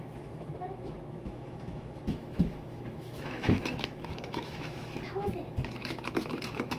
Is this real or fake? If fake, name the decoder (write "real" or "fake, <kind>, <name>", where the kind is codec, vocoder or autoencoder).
fake, autoencoder, DAC-VAE